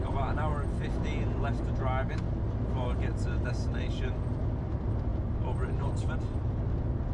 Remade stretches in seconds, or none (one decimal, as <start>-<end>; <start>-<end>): 0.0-0.5; 2.7-7.1